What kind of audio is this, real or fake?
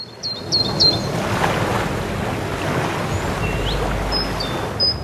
real